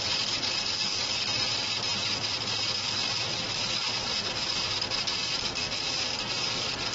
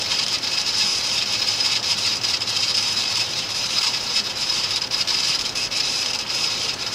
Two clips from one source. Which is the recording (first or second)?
first